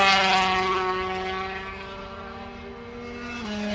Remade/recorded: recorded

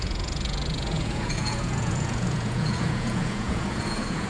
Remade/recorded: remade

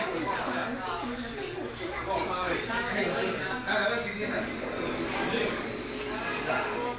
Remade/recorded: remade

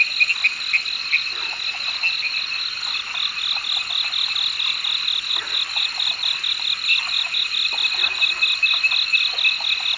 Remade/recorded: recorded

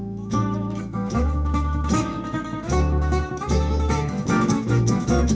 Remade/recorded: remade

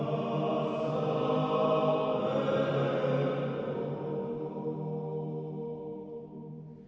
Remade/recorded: recorded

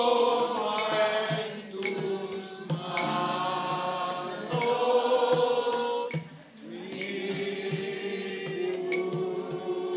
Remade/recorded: recorded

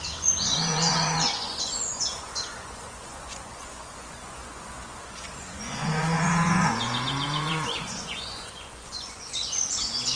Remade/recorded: remade